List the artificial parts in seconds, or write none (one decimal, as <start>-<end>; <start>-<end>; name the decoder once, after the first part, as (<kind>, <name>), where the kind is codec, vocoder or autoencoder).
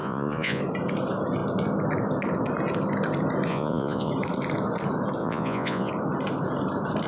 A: 0.0-0.6 (vocoder, Vocos); 3.5-4.1; 5.2-5.9